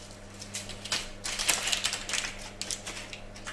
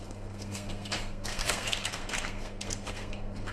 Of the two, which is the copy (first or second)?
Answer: second